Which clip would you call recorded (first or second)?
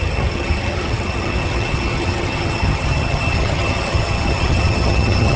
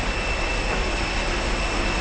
second